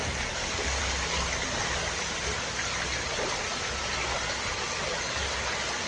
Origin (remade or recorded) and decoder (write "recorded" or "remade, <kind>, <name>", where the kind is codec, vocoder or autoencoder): recorded